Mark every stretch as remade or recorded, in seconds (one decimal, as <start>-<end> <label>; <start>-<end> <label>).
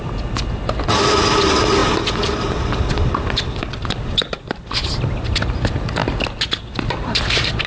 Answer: 0.0-6.0 remade; 6.0-6.9 recorded; 6.9-7.7 remade